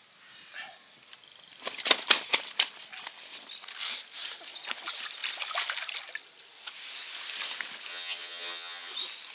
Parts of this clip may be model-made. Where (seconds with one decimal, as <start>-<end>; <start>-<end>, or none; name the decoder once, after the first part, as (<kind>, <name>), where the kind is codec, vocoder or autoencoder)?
7.9-8.9 (vocoder, HiFi-GAN)